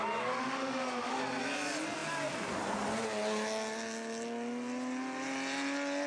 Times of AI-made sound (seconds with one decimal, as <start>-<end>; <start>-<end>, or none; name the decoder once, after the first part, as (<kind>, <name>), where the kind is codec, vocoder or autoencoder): 0.4-1.2 (autoencoder, DAC-VAE)